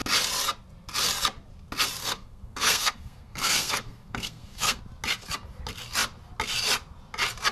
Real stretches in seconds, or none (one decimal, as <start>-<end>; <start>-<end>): 0.0-2.0; 4.8-7.5